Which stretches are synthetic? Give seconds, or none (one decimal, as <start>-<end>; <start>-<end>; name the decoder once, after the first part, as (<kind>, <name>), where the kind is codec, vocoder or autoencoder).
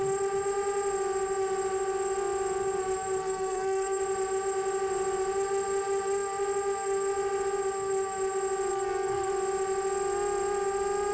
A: 3.2-4.0 (codec, SNAC); 8.7-9.3